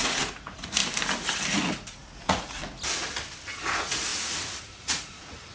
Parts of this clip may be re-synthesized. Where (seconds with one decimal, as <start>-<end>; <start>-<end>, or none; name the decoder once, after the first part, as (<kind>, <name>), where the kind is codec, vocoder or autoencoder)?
0.0-0.8 (vocoder, Vocos); 2.2-2.6; 3.5-5.5